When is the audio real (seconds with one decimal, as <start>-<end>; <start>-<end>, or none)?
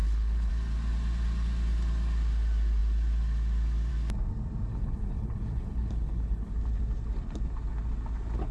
0.5-4.7; 6.5-8.5